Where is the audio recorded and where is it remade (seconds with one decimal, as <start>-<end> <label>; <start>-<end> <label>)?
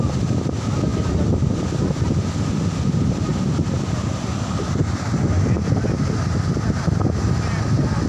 0.0-8.1 recorded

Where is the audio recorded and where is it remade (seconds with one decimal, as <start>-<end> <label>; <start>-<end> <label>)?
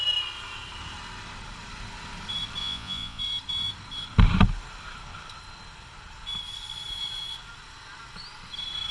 0.0-2.6 recorded; 2.6-3.2 remade; 3.2-8.9 recorded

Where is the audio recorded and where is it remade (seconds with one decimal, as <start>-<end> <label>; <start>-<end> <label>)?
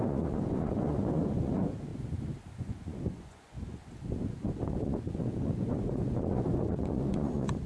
0.0-1.9 remade; 1.9-2.6 recorded; 2.6-3.8 remade; 3.8-4.3 recorded; 4.3-7.7 remade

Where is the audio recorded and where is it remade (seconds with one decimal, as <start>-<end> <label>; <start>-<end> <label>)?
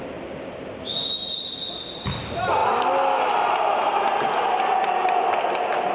0.0-5.9 recorded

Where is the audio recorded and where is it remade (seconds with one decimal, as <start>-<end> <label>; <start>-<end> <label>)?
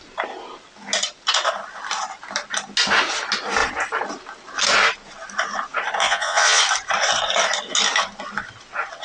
0.0-6.0 recorded; 6.0-6.6 remade; 6.6-9.0 recorded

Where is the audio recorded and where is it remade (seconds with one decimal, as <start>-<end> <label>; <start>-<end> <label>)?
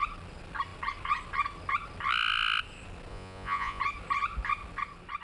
0.0-3.1 recorded; 3.1-3.8 remade; 3.8-5.2 recorded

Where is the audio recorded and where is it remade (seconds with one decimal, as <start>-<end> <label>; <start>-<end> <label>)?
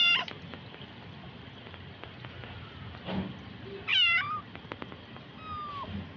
0.0-6.2 recorded